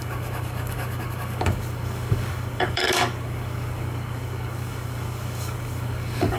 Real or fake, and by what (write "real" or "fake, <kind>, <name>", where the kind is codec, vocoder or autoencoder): fake, codec, DAC